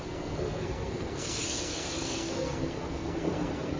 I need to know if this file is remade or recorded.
remade